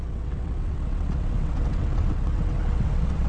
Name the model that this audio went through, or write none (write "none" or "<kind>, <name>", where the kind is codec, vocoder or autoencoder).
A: vocoder, WaveNeXt